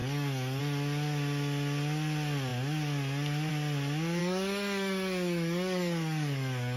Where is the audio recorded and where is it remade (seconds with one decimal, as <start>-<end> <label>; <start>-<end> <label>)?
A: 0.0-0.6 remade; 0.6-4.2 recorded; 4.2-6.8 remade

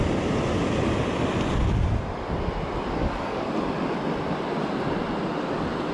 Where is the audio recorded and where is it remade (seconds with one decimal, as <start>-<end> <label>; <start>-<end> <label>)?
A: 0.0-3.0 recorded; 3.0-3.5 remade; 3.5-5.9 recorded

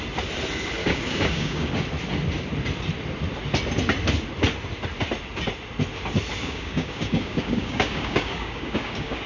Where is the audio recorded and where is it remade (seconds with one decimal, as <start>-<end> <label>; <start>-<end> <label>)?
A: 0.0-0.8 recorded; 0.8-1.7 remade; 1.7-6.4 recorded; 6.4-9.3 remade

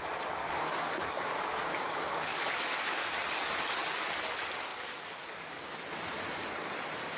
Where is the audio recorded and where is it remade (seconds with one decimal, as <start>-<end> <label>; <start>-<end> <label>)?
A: 0.0-0.4 recorded; 0.4-3.0 remade; 3.0-4.7 recorded; 4.7-5.6 remade; 5.6-7.2 recorded

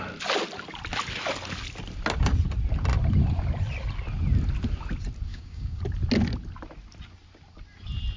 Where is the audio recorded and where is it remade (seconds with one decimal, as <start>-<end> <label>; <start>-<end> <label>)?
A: 0.0-5.3 recorded; 5.3-5.8 remade; 5.8-8.2 recorded